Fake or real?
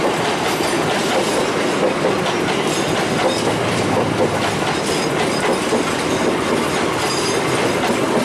real